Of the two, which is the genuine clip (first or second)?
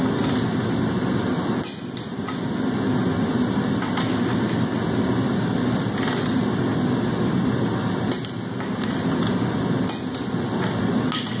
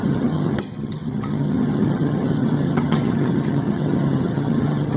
first